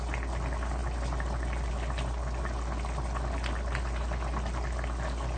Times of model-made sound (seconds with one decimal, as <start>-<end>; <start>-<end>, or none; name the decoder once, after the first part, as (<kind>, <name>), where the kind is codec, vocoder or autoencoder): none

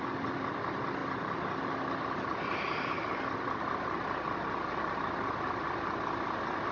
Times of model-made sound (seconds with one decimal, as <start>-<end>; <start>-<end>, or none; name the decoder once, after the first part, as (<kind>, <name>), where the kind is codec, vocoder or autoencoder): none